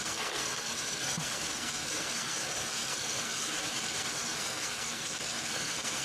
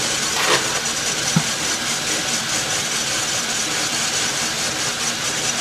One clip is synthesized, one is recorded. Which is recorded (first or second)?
second